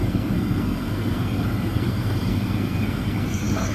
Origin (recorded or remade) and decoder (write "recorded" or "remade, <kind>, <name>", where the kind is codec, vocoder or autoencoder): remade, codec, SNAC